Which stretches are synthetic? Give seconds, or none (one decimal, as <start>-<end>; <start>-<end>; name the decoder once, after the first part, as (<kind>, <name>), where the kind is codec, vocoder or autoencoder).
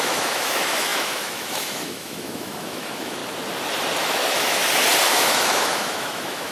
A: 0.0-3.2 (autoencoder, DAC-VAE); 4.0-4.6; 5.1-6.5